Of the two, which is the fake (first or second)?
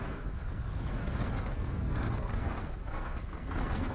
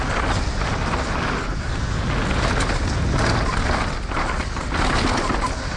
first